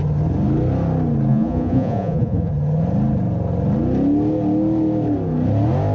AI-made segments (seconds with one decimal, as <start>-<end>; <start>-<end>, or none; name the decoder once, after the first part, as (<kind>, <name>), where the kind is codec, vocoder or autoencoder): 1.3-2.5 (vocoder, Vocos)